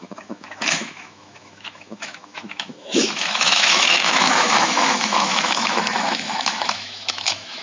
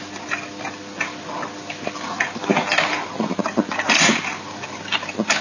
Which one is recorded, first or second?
second